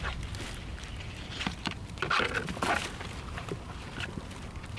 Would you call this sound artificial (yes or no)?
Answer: no